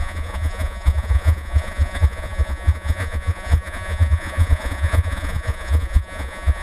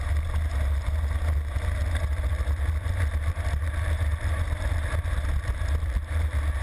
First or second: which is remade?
first